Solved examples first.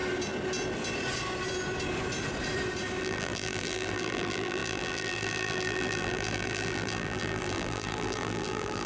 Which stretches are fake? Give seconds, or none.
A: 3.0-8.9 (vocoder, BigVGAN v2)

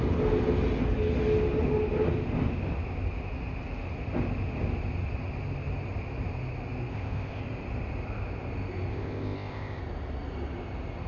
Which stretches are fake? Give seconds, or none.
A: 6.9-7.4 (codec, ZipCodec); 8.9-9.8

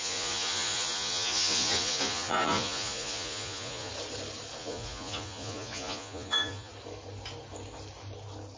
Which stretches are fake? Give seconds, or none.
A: 0.0-3.9 (vocoder, Vocos); 4.6-6.7

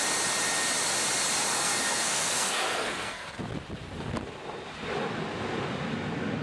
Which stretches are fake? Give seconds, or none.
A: 1.5-3.4 (codec, SNAC)

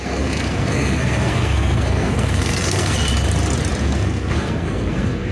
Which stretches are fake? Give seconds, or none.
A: 0.0-3.1 (codec, SNAC); 3.8-5.3